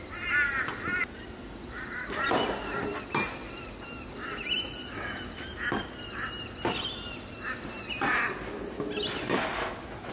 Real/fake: real